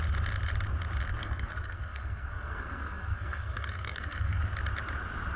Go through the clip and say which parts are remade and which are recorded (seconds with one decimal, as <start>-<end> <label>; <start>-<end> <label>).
0.0-1.2 recorded; 1.2-4.4 remade; 4.4-5.4 recorded

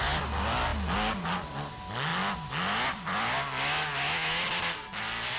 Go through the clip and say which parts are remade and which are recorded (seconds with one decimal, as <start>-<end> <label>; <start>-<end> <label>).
0.0-5.4 recorded

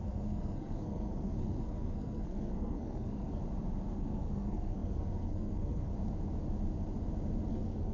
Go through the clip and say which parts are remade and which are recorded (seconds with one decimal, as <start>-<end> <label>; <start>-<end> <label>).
0.0-3.4 remade; 3.4-3.9 recorded; 3.9-5.9 remade; 5.9-7.5 recorded; 7.5-7.9 remade

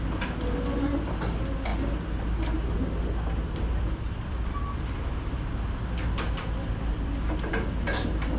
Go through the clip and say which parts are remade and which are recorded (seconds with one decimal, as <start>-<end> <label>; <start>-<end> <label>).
0.0-8.4 recorded

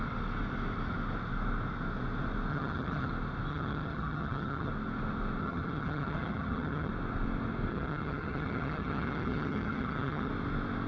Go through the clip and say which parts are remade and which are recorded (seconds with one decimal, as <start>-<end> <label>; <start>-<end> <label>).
0.0-2.5 recorded; 2.5-3.1 remade; 3.1-3.5 recorded; 3.5-4.7 remade; 4.7-5.4 recorded; 5.4-6.9 remade; 6.9-7.7 recorded; 7.7-10.3 remade; 10.3-10.9 recorded

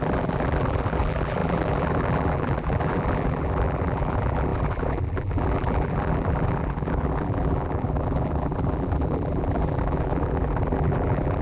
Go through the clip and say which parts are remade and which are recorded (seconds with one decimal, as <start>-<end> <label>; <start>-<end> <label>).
0.0-11.4 remade

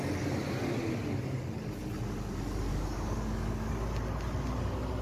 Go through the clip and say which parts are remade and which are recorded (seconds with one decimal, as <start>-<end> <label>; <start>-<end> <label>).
0.0-2.7 recorded; 2.7-3.7 remade; 3.7-5.0 recorded